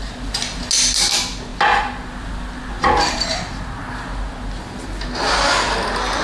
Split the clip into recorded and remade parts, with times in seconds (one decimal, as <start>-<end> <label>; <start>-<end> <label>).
0.0-6.2 recorded